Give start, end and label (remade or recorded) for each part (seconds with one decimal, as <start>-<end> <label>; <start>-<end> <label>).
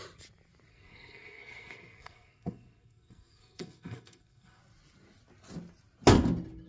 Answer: 0.0-0.7 recorded; 0.7-4.6 remade; 4.6-6.7 recorded